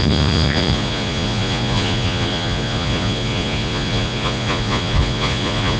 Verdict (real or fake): fake